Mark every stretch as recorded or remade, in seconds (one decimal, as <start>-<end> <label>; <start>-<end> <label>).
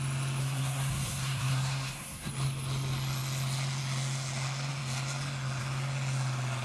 0.0-0.4 recorded; 0.4-2.3 remade; 2.3-6.6 recorded